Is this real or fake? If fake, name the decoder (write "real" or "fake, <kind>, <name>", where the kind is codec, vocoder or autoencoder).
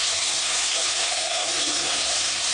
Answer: fake, codec, SNAC